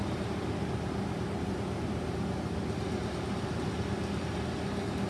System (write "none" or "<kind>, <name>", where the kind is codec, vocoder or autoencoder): none